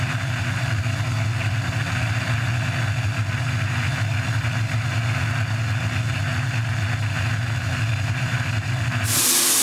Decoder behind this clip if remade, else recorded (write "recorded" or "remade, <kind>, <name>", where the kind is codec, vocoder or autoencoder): recorded